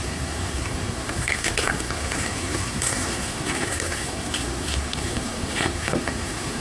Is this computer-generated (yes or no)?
yes